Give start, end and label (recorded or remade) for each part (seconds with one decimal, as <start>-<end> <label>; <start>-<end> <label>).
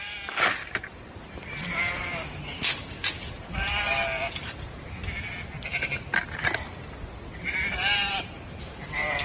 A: 0.0-5.0 remade; 5.0-7.3 recorded; 7.3-9.2 remade